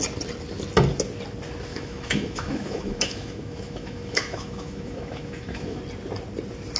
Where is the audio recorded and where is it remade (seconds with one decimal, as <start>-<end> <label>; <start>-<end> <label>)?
0.0-1.7 recorded; 1.7-5.8 remade; 5.8-6.8 recorded